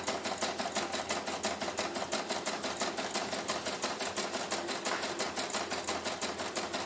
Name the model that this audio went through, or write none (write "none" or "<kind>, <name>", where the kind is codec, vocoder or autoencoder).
none